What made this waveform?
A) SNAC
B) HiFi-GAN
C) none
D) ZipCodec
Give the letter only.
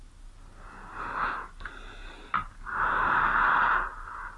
C